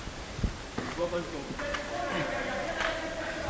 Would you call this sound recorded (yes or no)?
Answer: yes